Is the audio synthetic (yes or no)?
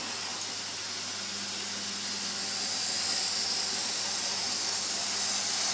no